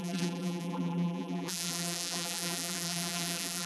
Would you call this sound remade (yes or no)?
yes